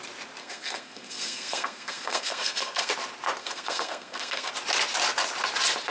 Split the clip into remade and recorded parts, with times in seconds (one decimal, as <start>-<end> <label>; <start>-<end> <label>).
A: 0.0-0.4 recorded; 0.4-2.9 remade; 2.9-3.4 recorded; 3.4-4.5 remade; 4.5-5.9 recorded